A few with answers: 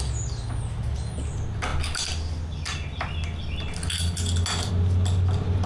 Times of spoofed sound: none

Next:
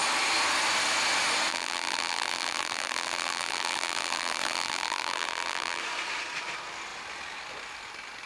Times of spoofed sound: 1.5-5.8 (vocoder, BigVGAN v2)

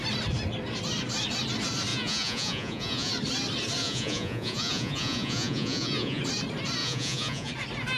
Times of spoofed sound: 1.9-3.1 (vocoder, Vocos); 3.8-6.2; 6.8-7.5

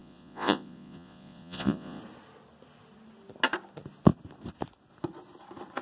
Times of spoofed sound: 0.0-2.0 (vocoder, Vocos)

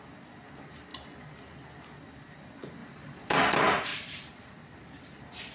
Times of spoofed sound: 2.8-3.4 (vocoder, BigVGAN v2); 3.9-5.5

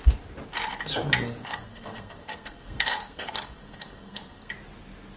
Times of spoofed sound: 1.4-4.5 (codec, SNAC)